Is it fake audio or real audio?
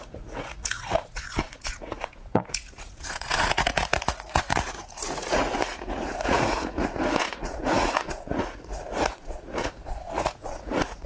fake